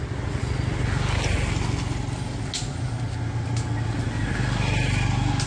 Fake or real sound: real